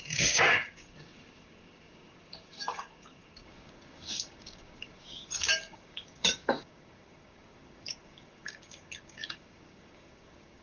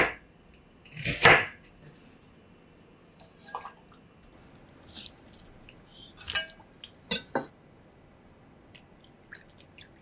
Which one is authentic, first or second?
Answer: second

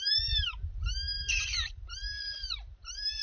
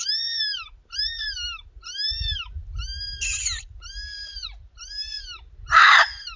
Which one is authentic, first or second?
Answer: second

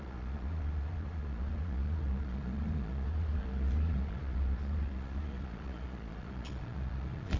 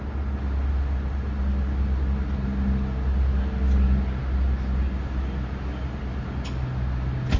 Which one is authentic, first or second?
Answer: second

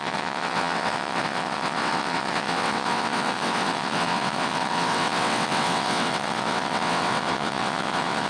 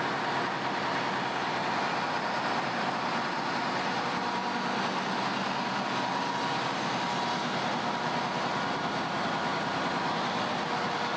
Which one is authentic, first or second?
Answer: second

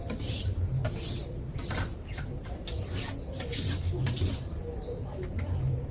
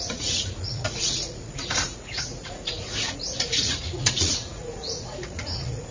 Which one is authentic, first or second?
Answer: first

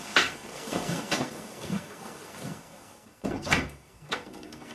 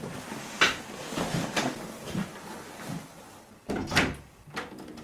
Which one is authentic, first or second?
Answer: second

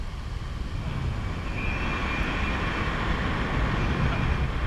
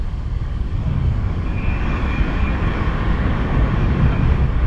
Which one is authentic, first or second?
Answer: first